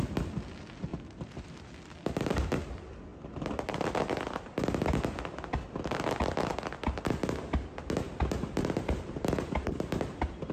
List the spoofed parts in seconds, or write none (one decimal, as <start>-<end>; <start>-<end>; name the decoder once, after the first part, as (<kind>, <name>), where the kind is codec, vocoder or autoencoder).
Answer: 0.9-1.7 (vocoder, BigVGAN v2); 8.6-10.5

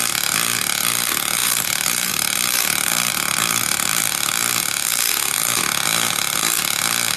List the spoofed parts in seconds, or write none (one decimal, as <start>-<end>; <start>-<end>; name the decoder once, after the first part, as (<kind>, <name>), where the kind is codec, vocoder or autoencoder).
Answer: 1.4-4.0 (vocoder, BigVGAN v2)